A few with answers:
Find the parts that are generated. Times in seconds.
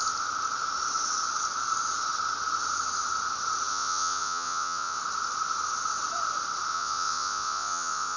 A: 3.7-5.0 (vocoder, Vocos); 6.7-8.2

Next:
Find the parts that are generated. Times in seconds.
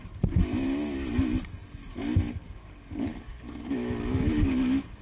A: none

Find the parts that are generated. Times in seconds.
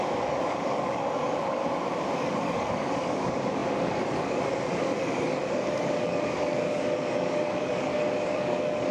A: 0.0-1.6 (codec, DAC); 2.1-8.9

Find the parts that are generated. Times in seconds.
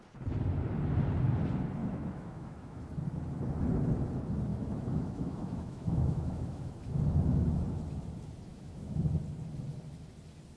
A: 1.8-2.8 (autoencoder, DAC-VAE); 4.5-7.0; 8.5-9.0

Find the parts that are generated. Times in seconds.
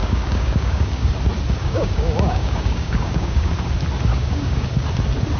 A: 0.0-1.1 (codec, DAC); 1.6-3.5; 4.1-4.7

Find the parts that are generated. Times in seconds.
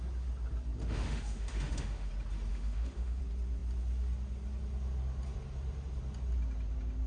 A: 0.8-2.1 (autoencoder, DAC-VAE); 2.5-3.2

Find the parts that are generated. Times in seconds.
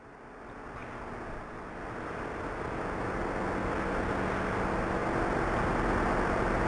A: none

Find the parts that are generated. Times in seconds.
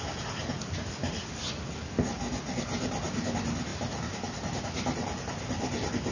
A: none